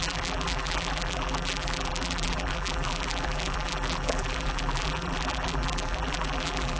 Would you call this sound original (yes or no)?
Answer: no